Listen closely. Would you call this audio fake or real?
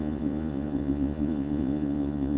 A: fake